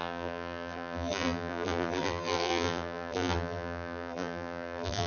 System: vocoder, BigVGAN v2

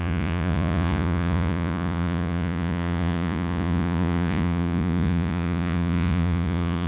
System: vocoder, Vocos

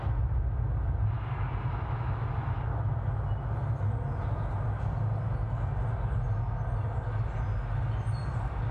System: none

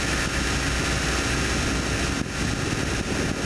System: none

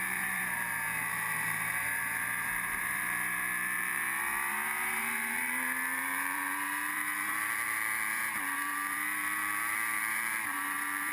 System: vocoder, BigVGAN v2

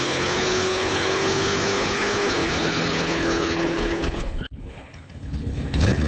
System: codec, HILCodec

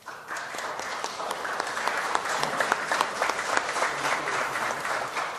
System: vocoder, BigVGAN v2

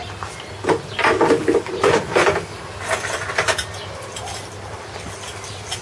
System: none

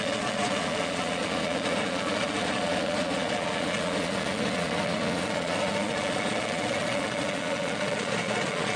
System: vocoder, Vocos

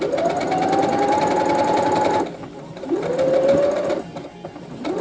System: none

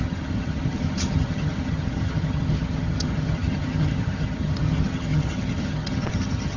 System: vocoder, HiFi-GAN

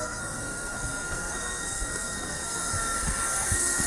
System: codec, SNAC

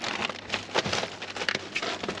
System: none